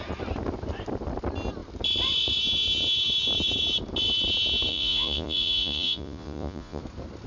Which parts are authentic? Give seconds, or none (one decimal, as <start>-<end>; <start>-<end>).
0.0-4.7; 6.8-7.3